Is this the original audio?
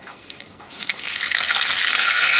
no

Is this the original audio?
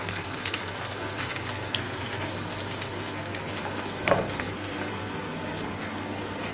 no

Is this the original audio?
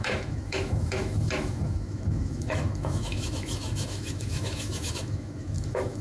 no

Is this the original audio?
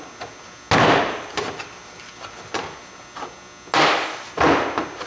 yes